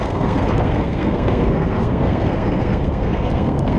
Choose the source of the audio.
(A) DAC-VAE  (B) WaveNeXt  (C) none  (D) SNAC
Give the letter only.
D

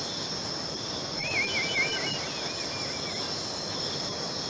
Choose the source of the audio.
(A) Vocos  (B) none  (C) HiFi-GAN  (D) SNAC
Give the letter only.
B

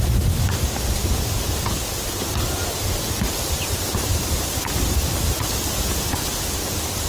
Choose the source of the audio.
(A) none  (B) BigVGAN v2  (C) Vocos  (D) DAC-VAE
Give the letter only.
A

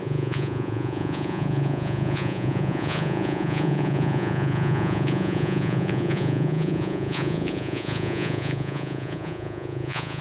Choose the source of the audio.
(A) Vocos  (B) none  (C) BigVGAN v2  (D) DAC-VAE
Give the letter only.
A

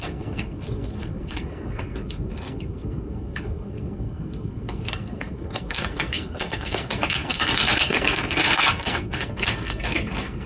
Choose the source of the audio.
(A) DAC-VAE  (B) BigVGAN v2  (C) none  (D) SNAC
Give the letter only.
D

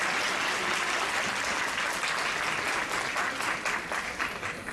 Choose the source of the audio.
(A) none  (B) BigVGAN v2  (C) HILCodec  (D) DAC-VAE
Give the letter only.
A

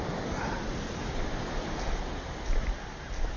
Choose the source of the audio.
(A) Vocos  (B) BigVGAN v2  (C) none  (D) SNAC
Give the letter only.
C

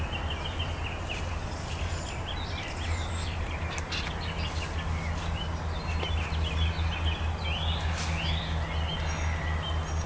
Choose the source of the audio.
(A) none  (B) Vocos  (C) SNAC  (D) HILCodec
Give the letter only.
A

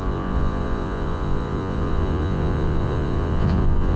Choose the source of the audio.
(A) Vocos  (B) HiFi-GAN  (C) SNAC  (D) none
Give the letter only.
A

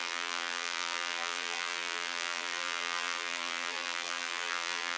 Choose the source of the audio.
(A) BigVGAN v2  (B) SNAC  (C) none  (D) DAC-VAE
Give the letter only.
A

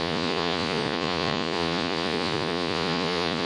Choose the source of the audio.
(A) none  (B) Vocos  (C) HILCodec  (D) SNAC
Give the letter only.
B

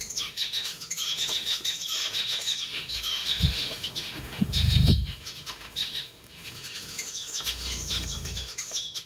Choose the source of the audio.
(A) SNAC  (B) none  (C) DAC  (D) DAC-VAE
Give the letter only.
D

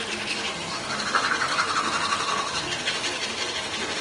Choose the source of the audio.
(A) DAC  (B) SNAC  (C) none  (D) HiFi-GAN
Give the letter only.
C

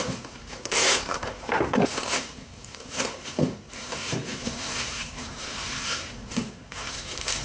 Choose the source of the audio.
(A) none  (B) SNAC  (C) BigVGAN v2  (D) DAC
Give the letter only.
B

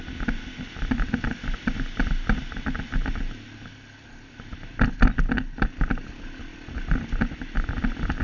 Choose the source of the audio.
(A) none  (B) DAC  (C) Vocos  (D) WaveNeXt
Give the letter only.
A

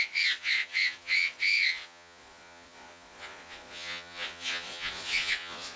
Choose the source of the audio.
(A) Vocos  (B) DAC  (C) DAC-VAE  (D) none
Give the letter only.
A